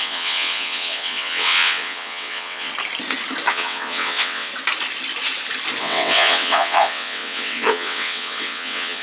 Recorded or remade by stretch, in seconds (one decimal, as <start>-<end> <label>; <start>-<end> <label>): 0.0-2.7 remade; 2.7-3.5 recorded; 3.5-4.5 remade; 4.5-5.8 recorded; 5.8-9.0 remade